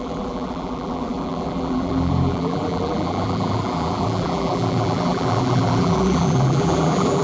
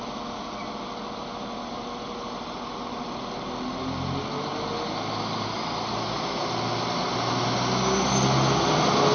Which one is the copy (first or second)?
first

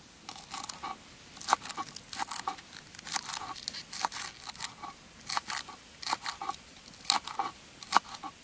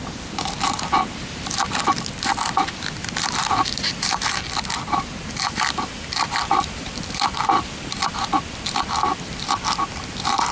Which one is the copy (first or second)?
second